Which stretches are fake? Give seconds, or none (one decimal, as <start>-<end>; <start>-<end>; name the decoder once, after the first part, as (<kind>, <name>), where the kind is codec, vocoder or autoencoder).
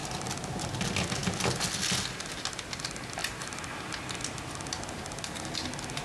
none